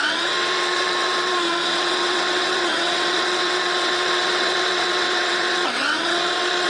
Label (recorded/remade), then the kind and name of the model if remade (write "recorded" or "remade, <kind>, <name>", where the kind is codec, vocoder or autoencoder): remade, vocoder, WaveNeXt